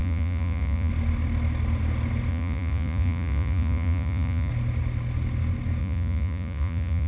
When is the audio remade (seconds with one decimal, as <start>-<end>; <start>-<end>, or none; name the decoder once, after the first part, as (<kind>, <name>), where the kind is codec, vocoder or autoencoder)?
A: 0.0-0.9 (vocoder, Vocos); 2.3-4.5; 5.8-7.1